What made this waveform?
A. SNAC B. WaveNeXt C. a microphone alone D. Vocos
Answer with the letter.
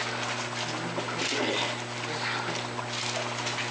C